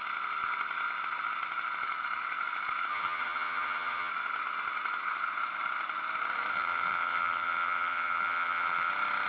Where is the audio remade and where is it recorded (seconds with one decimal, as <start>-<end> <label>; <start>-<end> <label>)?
0.0-2.9 recorded; 2.9-4.1 remade; 4.1-6.5 recorded; 6.5-8.9 remade; 8.9-9.3 recorded